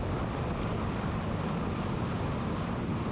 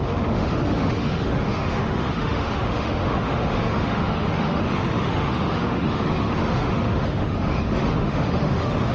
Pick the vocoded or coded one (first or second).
second